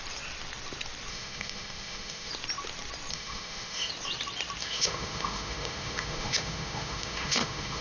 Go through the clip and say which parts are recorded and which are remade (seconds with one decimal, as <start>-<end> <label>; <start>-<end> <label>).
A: 0.0-1.1 recorded; 1.1-2.3 remade; 2.3-3.1 recorded; 3.1-3.9 remade; 3.9-4.6 recorded; 4.6-7.8 remade